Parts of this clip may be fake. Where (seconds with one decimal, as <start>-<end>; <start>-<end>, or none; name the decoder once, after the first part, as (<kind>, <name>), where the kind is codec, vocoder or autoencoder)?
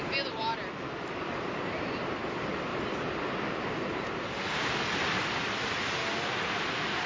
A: none